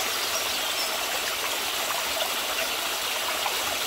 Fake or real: real